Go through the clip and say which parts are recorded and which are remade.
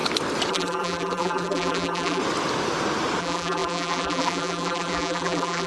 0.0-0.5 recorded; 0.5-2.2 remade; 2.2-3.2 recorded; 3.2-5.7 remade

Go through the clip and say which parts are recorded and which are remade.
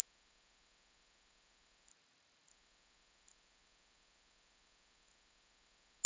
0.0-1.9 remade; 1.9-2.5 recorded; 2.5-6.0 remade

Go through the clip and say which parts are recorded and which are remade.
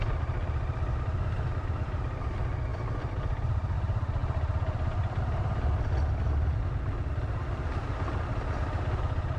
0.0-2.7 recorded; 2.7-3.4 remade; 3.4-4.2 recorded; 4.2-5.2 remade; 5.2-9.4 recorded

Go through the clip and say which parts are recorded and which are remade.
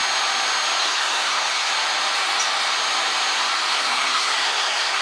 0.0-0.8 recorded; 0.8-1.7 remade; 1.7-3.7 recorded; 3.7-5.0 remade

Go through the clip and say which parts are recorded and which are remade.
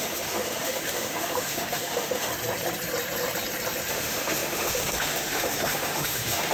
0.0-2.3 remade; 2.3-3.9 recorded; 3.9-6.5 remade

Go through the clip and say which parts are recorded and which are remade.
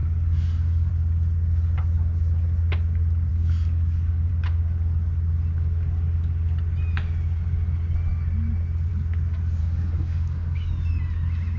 0.0-0.9 remade; 0.9-3.3 recorded; 3.3-4.3 remade; 4.3-9.6 recorded; 9.6-10.7 remade; 10.7-11.6 recorded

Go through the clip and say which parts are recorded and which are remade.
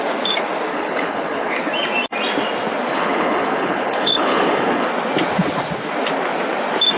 0.0-0.7 recorded; 0.7-1.5 remade; 1.5-2.9 recorded; 2.9-4.9 remade; 4.9-7.0 recorded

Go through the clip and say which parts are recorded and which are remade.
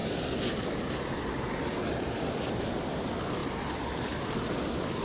0.0-5.0 recorded